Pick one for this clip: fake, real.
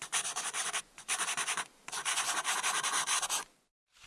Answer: fake